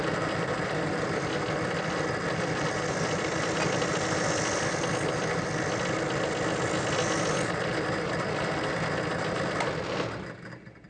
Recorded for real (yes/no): yes